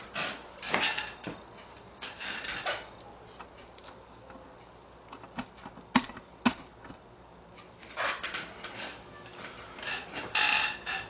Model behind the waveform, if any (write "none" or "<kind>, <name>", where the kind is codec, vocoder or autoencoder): none